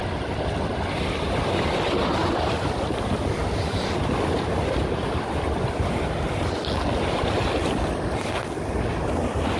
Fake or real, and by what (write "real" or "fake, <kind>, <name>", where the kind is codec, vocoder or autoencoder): real